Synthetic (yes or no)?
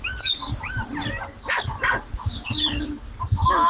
no